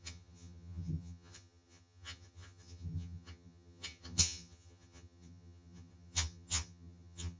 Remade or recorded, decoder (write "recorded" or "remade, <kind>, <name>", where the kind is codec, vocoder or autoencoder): remade, vocoder, HiFi-GAN